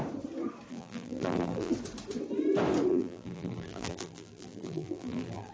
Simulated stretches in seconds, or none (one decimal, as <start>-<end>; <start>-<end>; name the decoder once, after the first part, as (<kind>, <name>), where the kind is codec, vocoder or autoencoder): 0.7-1.7 (vocoder, BigVGAN v2); 2.9-5.5